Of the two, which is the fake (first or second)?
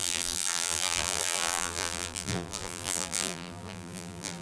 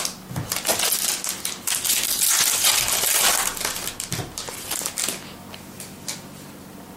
first